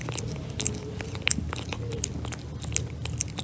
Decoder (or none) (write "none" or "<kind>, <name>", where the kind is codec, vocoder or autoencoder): none